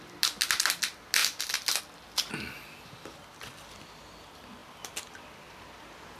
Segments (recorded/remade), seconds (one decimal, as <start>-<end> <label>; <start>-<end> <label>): 0.0-6.2 recorded